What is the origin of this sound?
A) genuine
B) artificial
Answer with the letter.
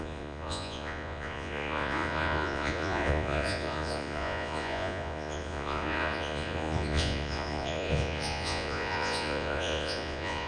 B